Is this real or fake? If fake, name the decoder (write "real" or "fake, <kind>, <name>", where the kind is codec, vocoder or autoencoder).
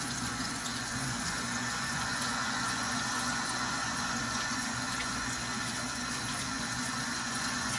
fake, vocoder, Vocos